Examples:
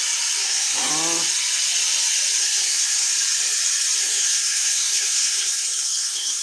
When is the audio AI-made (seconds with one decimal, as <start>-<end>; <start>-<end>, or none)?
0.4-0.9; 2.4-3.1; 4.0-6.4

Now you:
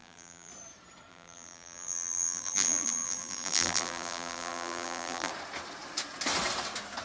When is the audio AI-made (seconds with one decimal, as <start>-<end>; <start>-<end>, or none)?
0.0-0.5; 1.1-5.3

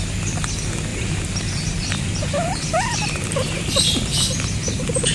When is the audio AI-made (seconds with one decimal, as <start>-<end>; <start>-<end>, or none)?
0.9-3.6